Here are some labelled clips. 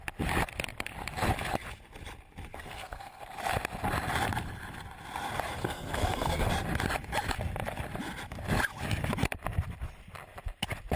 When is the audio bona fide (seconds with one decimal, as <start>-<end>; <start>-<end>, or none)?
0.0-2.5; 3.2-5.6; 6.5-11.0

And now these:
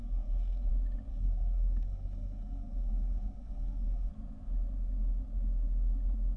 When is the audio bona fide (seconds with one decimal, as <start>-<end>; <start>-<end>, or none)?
0.7-1.1; 4.1-6.4

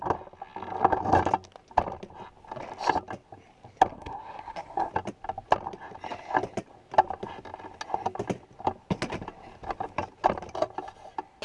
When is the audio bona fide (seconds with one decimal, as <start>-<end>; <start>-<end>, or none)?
0.0-3.9; 4.9-11.4

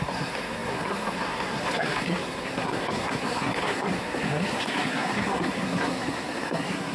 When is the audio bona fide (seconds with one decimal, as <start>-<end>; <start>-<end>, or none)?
none

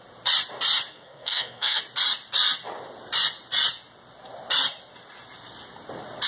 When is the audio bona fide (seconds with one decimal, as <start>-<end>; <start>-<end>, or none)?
0.0-0.9; 1.8-6.3